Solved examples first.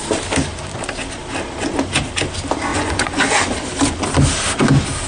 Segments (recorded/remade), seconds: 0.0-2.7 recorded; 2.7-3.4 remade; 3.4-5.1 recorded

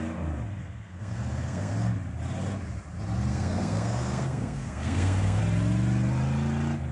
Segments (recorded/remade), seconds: 0.0-0.6 recorded; 0.6-1.7 remade; 1.7-3.3 recorded; 3.3-5.4 remade; 5.4-6.9 recorded

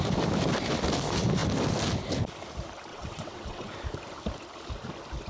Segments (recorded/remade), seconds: 0.0-2.9 recorded; 2.9-3.7 remade; 3.7-5.3 recorded

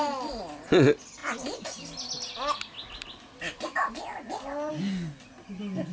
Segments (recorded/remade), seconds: 0.0-5.9 recorded

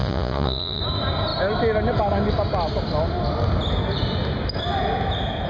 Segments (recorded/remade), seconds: 0.0-0.8 remade; 0.8-5.5 recorded

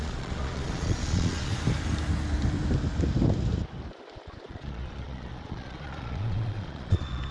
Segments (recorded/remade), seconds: 0.0-1.5 remade; 1.5-4.4 recorded; 4.4-7.3 remade

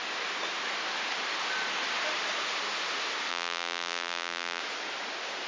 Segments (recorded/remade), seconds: 0.0-3.3 recorded; 3.3-4.6 remade; 4.6-5.5 recorded

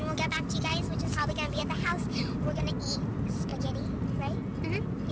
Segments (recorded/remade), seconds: 0.0-5.1 recorded